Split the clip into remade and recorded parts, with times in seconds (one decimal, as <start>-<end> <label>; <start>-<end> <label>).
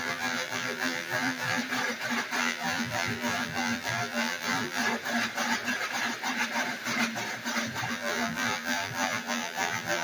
0.0-1.6 remade; 1.6-2.4 recorded; 2.4-4.8 remade; 4.8-7.9 recorded; 7.9-10.0 remade